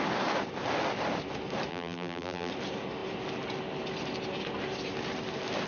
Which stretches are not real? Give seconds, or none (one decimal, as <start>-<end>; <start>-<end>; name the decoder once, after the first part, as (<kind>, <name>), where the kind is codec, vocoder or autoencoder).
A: 1.7-2.5 (vocoder, BigVGAN v2)